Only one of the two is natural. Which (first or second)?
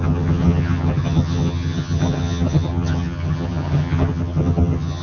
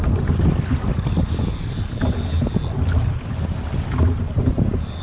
second